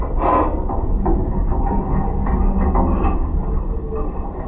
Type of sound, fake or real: real